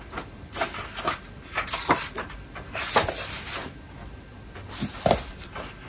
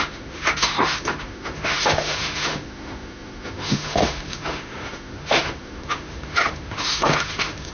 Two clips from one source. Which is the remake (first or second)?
second